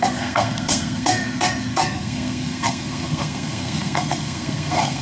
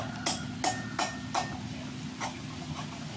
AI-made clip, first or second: first